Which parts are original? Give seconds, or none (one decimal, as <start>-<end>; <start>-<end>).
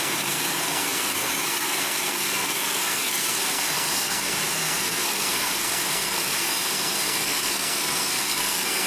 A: none